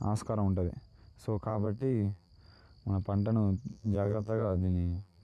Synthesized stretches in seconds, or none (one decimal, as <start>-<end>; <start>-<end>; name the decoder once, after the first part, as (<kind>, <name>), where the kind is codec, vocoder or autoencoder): 1.5-2.3 (vocoder, BigVGAN v2); 3.7-5.2